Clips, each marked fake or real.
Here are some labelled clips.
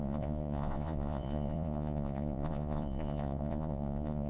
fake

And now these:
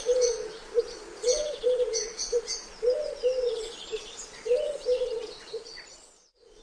fake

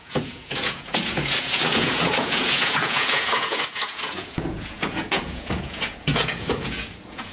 fake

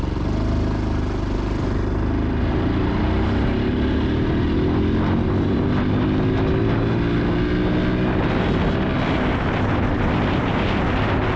real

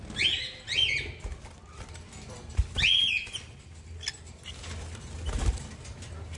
real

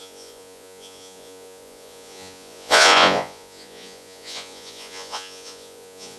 fake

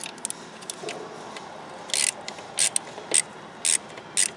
real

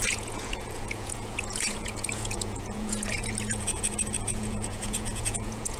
fake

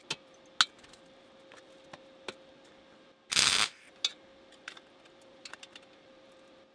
real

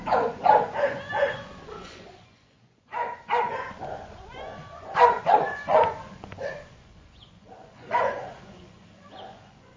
fake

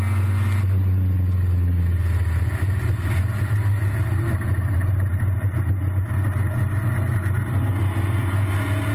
real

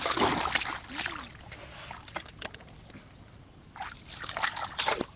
real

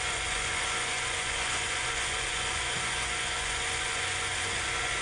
fake